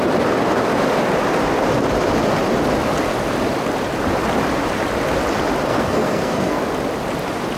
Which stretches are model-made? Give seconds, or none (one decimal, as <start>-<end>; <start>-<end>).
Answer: 5.7-6.6